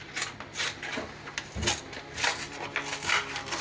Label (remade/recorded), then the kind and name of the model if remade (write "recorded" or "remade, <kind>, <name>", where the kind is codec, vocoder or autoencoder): recorded